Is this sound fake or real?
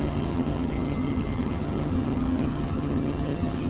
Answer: fake